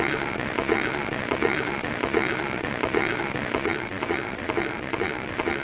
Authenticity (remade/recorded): remade